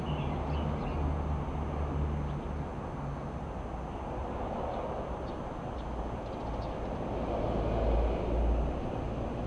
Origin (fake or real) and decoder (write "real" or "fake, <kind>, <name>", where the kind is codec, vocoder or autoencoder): real